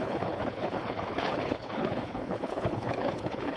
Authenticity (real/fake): fake